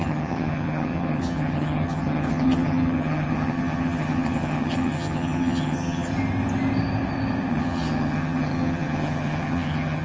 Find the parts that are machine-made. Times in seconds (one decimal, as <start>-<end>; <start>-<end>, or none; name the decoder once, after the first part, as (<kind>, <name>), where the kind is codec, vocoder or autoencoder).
0.0-6.1 (vocoder, HiFi-GAN); 7.5-10.0